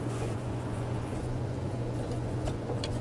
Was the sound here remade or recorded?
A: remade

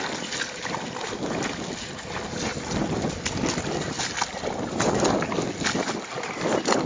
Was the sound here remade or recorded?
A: recorded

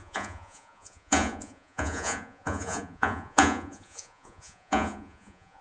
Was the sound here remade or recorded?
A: remade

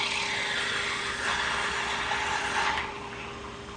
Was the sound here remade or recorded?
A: recorded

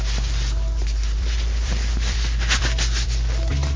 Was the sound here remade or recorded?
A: recorded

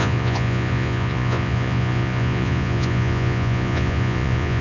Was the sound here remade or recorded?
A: remade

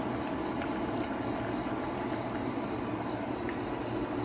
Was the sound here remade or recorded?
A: recorded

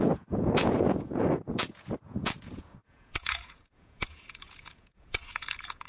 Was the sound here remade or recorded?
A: remade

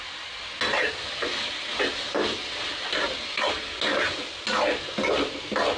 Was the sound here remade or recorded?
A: recorded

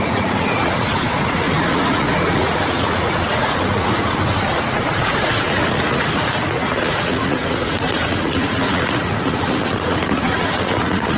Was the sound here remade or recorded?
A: remade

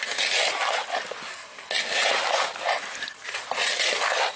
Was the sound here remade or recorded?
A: recorded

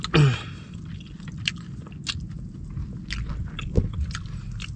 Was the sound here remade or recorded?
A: recorded